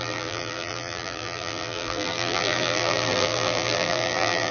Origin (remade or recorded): remade